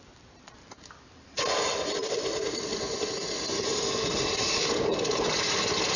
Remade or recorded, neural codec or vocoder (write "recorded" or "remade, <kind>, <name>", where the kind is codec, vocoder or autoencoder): recorded